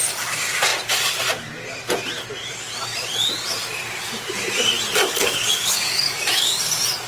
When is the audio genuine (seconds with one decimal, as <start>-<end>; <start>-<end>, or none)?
0.0-5.0; 6.6-7.1